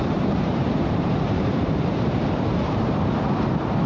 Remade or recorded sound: remade